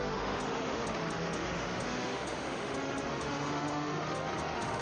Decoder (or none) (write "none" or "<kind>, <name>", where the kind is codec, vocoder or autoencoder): autoencoder, DAC-VAE